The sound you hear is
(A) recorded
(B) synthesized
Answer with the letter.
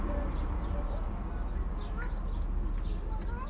A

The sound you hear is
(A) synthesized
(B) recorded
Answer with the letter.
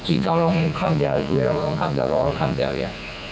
A